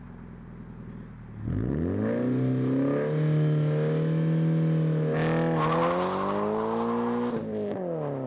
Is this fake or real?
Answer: real